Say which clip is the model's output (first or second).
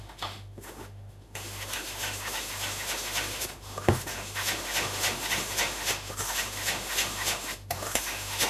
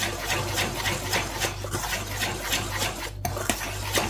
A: first